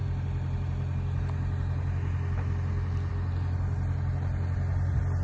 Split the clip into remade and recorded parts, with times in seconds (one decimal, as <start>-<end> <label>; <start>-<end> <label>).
0.0-5.2 recorded